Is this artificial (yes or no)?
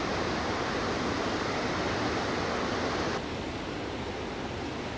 no